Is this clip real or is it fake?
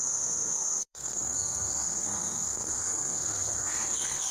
fake